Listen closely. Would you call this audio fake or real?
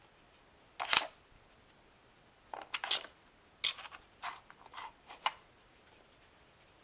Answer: real